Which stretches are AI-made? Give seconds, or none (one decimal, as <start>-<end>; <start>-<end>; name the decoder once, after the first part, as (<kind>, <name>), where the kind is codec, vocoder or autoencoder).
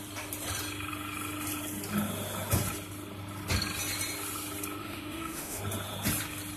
4.8-5.6 (autoencoder, DAC-VAE)